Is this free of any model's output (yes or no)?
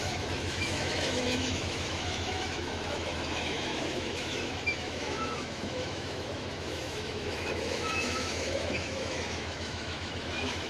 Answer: no